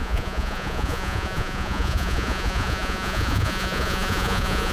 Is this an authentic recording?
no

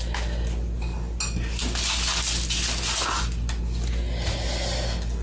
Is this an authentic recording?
yes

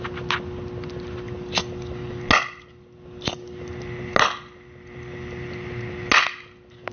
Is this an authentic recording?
yes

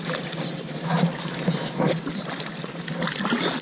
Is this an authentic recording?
yes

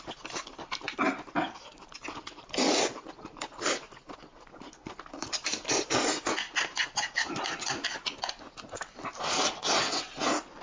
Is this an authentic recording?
yes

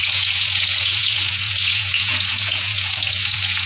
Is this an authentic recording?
no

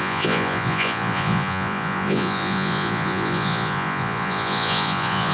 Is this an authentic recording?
no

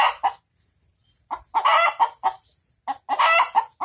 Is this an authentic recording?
yes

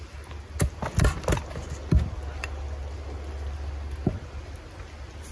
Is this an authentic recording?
yes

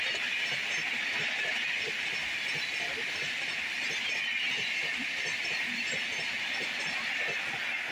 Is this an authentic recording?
yes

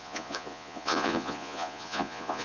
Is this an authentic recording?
no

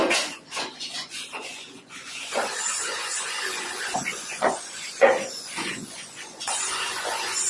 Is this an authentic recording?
no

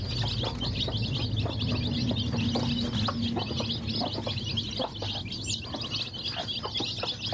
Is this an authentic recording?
yes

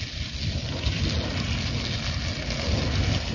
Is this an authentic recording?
yes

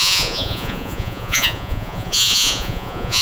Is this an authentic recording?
no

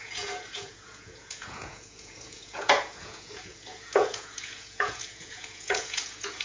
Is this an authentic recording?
no